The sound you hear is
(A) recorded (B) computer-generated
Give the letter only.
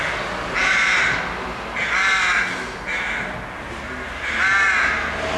A